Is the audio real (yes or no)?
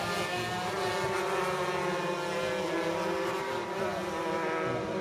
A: yes